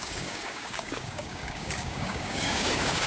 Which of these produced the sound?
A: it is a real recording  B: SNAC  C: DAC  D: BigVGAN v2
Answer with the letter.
C